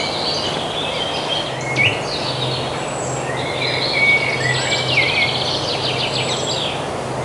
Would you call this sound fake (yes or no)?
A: no